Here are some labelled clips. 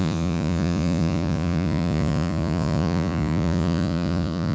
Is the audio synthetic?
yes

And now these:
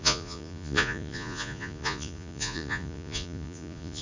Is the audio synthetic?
yes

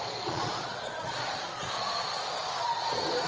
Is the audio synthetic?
yes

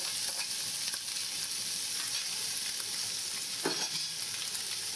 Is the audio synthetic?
no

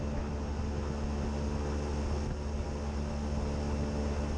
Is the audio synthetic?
no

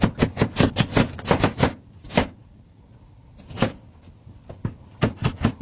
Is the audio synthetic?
no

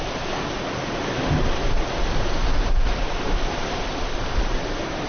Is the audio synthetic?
no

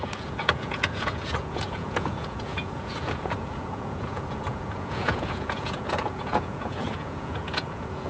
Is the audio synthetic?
yes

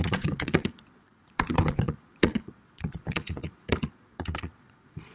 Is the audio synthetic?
yes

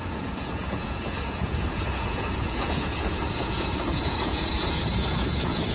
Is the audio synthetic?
yes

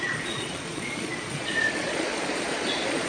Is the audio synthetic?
yes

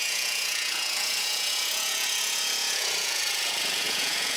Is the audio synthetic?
yes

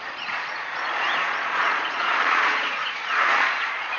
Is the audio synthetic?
yes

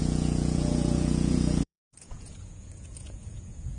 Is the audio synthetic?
yes